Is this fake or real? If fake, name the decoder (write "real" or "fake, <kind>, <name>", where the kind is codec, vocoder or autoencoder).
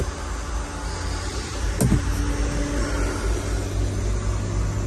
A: real